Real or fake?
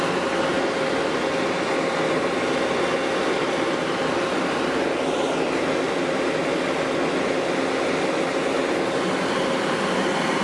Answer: real